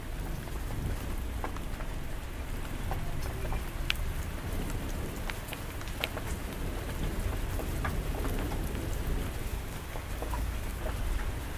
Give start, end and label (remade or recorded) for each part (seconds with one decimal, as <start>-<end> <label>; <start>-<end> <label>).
0.0-9.4 recorded; 9.4-10.8 remade; 10.8-11.6 recorded